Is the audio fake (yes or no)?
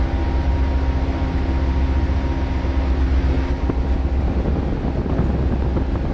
no